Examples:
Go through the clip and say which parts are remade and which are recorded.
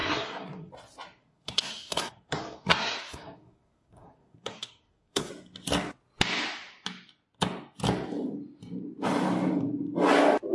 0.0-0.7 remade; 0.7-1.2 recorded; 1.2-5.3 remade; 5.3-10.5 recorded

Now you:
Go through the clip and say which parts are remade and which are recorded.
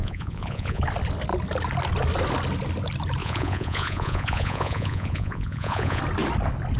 0.0-0.8 remade; 0.8-3.2 recorded; 3.2-6.0 remade; 6.0-6.8 recorded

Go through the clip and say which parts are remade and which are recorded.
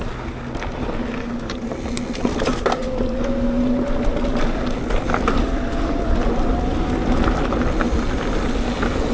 0.0-9.1 recorded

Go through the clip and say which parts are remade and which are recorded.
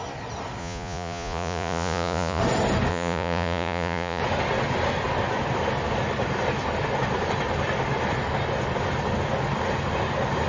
0.0-0.6 recorded; 0.6-2.4 remade; 2.4-2.9 recorded; 2.9-4.2 remade; 4.2-10.5 recorded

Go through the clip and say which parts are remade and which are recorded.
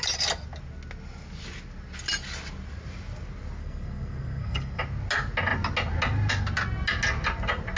0.0-3.6 recorded; 3.6-4.8 remade; 4.8-7.8 recorded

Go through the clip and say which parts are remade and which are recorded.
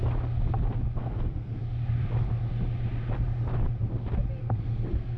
0.0-1.0 recorded; 1.0-1.6 remade; 1.6-4.4 recorded; 4.4-5.2 remade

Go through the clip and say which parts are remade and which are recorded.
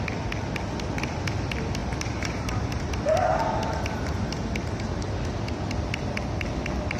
0.0-1.8 recorded; 1.8-2.9 remade; 2.9-7.0 recorded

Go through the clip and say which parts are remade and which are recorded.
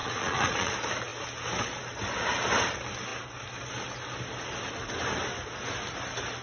0.0-0.7 remade; 0.7-6.4 recorded